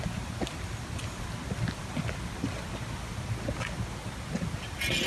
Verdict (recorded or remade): recorded